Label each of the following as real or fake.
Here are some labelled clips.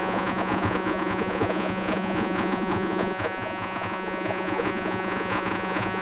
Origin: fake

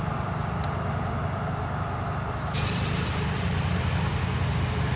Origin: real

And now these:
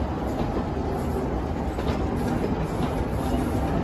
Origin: real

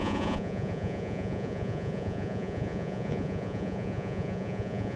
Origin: fake